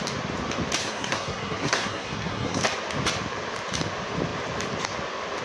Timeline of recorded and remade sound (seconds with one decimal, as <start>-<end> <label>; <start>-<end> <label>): 0.0-0.8 recorded; 0.8-2.6 remade; 2.6-5.4 recorded